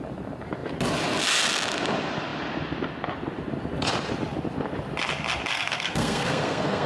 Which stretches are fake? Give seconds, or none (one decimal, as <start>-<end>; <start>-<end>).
5.5-6.9